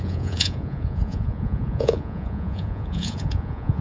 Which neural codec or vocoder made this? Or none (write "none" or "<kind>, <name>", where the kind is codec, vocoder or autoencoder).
vocoder, Vocos